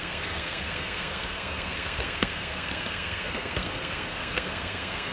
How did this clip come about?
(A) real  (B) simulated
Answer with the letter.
B